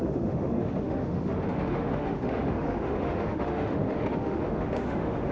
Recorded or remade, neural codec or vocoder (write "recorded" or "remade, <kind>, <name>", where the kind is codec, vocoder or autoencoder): remade, autoencoder, DAC-VAE